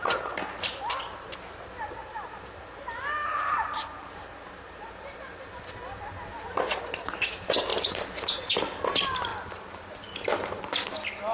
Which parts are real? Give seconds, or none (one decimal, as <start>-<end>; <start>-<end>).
0.0-2.0; 5.5-7.7; 8.5-9.3; 10.6-11.3